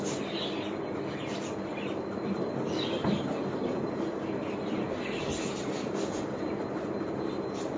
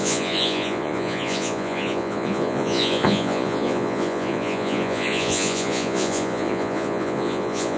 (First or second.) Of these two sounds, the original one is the first